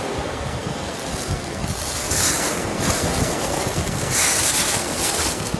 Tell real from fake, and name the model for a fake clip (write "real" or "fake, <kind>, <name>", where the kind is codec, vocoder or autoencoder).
fake, codec, SNAC